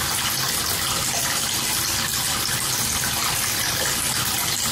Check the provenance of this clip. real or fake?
real